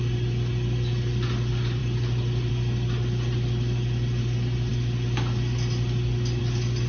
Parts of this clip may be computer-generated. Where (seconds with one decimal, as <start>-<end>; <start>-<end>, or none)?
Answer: none